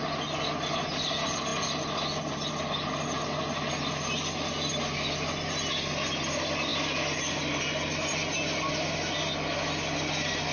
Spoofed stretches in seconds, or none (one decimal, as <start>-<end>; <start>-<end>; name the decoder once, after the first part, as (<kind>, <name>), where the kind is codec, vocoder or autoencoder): none